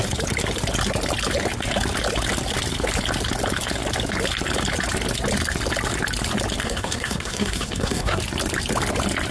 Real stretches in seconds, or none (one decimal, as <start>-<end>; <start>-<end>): 0.0-6.6; 8.2-9.3